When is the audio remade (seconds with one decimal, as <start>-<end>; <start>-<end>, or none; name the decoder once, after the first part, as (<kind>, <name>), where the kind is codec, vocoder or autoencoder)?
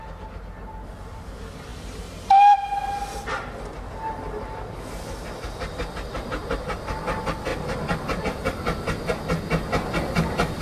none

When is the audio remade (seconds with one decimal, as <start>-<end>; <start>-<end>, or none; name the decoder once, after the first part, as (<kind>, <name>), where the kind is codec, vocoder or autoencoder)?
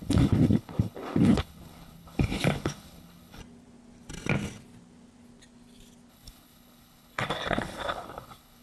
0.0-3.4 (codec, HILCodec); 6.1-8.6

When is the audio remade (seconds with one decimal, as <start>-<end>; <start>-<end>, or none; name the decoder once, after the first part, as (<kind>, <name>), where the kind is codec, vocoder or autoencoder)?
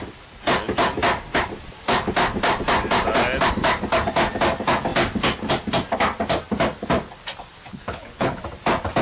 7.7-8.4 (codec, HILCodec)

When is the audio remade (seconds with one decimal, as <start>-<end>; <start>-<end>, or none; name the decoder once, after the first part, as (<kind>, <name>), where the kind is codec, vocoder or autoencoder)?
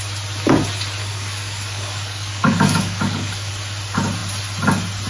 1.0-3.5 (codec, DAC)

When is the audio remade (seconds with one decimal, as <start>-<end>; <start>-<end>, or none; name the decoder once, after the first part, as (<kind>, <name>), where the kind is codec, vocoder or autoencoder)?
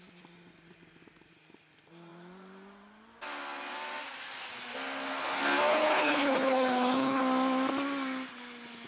5.7-7.2 (codec, HILCodec)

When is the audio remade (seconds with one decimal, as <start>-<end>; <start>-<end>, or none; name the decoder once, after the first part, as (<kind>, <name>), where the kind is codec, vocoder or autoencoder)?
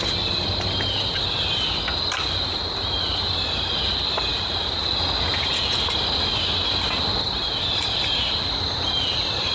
none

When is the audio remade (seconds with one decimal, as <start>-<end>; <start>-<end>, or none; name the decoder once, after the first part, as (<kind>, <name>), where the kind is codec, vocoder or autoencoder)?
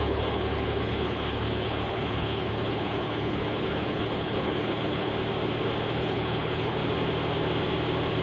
0.0-5.1 (codec, HILCodec); 5.9-6.8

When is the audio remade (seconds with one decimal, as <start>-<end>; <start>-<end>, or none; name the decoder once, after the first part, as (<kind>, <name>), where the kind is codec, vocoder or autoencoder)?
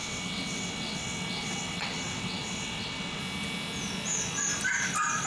0.0-3.2 (vocoder, WaveNeXt)